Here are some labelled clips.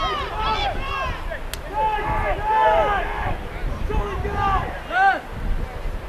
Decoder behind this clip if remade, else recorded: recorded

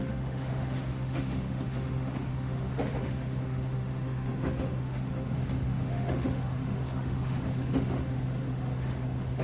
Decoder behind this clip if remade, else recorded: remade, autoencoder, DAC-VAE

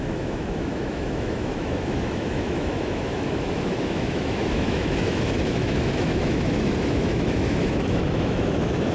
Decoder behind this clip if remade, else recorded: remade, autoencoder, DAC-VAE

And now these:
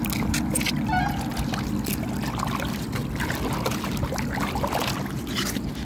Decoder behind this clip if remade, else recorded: recorded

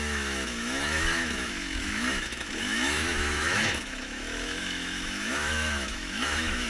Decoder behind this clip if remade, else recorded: remade, autoencoder, DAC-VAE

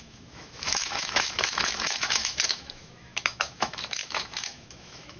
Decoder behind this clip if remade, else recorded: remade, autoencoder, DAC-VAE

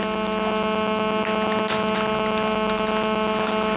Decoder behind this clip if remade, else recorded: recorded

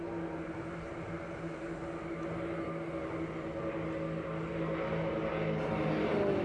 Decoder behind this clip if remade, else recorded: recorded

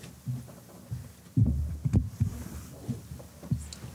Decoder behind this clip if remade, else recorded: recorded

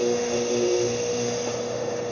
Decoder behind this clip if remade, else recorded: remade, autoencoder, DAC-VAE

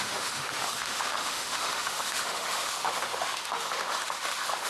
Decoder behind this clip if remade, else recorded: remade, autoencoder, DAC-VAE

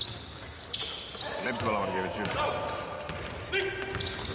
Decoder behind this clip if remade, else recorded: recorded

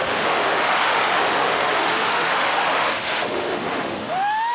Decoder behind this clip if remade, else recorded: remade, autoencoder, DAC-VAE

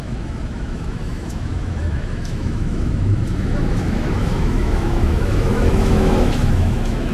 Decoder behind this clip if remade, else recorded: remade, autoencoder, DAC-VAE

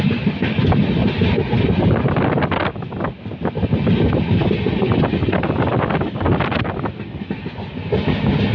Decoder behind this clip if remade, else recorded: recorded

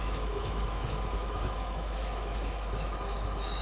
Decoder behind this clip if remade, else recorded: remade, autoencoder, DAC-VAE